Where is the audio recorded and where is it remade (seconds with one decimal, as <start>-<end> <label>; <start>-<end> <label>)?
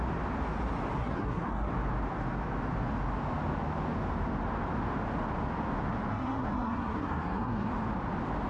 0.0-1.0 recorded; 1.0-1.7 remade; 1.7-6.1 recorded; 6.1-7.7 remade; 7.7-8.5 recorded